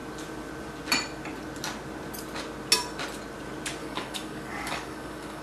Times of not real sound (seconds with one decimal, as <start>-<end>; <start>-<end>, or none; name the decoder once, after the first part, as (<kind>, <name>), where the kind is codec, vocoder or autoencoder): 3.8-5.4 (codec, DAC)